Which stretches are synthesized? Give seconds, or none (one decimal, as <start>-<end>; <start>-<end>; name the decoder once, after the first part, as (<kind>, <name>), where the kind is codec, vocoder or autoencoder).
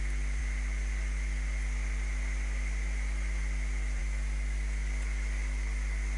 none